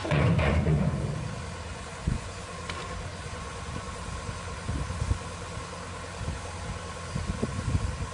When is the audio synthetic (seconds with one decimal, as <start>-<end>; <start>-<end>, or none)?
0.0-0.8; 1.7-2.5; 3.1-3.9